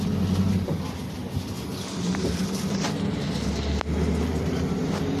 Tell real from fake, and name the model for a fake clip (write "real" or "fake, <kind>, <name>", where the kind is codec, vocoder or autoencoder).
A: real